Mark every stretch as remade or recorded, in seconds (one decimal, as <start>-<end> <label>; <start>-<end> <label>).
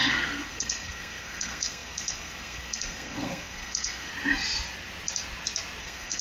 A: 0.0-4.1 remade; 4.1-5.8 recorded; 5.8-6.2 remade